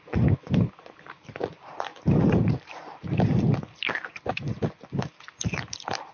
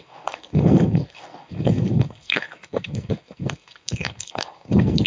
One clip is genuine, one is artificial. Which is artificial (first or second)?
second